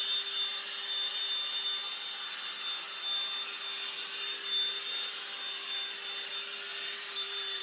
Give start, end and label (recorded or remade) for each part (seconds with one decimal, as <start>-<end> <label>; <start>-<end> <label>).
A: 0.0-6.7 recorded; 6.7-7.6 remade